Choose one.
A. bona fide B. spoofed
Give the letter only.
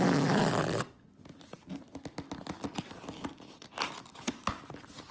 A